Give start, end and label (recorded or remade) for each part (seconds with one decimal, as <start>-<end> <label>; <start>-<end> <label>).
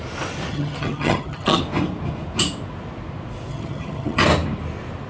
0.0-0.5 recorded; 0.5-1.6 remade; 1.6-3.5 recorded; 3.5-4.2 remade; 4.2-5.1 recorded